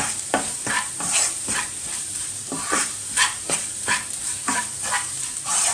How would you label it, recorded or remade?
remade